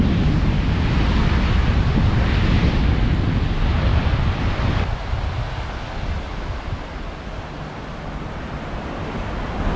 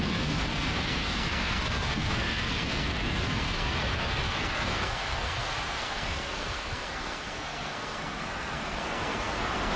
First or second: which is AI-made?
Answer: second